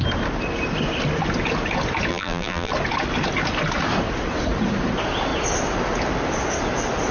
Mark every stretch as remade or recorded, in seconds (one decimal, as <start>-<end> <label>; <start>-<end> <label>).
0.0-2.1 recorded; 2.1-2.7 remade; 2.7-7.1 recorded